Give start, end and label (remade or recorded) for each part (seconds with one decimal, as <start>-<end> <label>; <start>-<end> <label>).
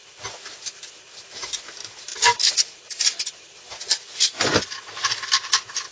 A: 0.0-5.9 recorded